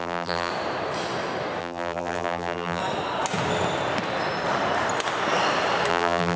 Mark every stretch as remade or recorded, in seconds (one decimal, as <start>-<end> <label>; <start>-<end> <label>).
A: 0.0-0.5 remade; 0.5-1.6 recorded; 1.6-2.8 remade; 2.8-5.9 recorded; 5.9-6.4 remade